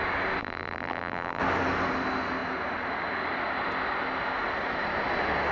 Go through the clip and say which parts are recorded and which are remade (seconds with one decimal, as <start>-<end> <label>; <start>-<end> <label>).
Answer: 0.0-0.4 recorded; 0.4-1.4 remade; 1.4-5.5 recorded